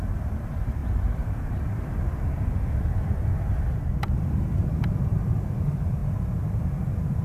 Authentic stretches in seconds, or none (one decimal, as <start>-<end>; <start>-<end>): 6.0-6.5